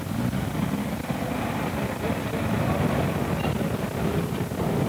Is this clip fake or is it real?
real